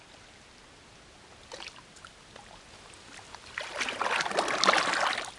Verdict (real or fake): real